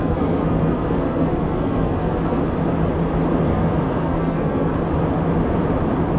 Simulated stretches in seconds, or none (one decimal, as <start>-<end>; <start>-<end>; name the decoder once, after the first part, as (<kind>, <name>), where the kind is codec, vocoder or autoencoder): 0.0-2.4 (codec, SNAC); 3.5-4.7